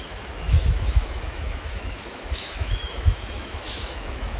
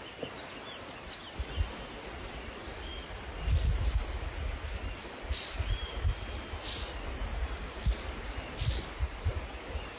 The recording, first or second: second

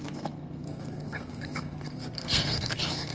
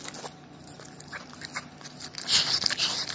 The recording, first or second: second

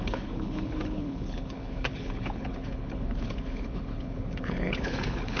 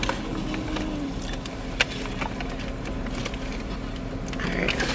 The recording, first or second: second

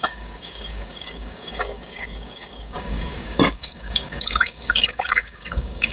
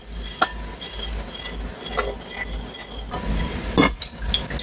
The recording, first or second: second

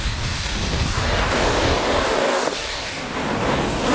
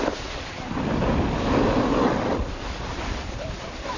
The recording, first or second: second